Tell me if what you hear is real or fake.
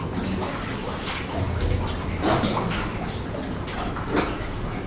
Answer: real